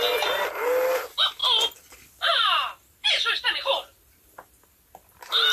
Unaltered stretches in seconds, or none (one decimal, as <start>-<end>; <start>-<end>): 0.0-5.5